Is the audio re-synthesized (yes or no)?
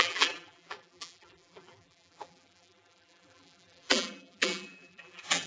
yes